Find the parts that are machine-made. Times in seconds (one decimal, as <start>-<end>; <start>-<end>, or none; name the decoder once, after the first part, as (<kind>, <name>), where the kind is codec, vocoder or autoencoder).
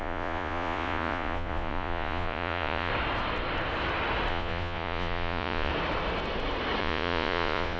0.0-2.9 (vocoder, Vocos); 4.3-5.7; 6.8-7.8